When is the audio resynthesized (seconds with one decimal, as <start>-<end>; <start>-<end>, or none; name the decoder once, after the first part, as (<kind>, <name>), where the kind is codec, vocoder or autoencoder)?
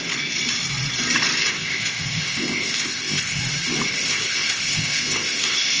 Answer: 1.4-3.4 (codec, ZipCodec); 3.9-5.8